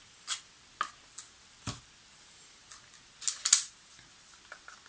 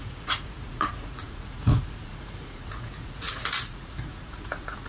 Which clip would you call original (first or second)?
first